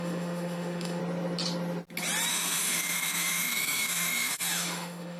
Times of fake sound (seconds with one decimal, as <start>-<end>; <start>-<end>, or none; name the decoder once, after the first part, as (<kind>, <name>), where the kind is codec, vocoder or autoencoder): 0.0-1.0 (autoencoder, DAC-VAE); 2.3-5.2